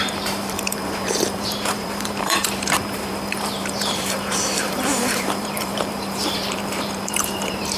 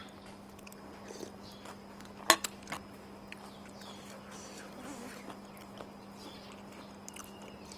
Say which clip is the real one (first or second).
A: second